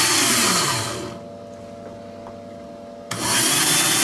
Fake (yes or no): no